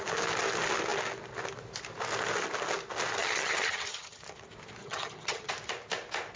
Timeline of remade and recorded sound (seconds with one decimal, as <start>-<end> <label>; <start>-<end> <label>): 0.0-3.2 recorded; 3.2-4.2 remade; 4.2-4.8 recorded; 4.8-5.5 remade; 5.5-6.4 recorded